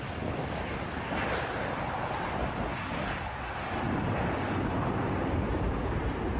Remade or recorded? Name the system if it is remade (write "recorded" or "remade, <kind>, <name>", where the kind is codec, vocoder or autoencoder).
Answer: recorded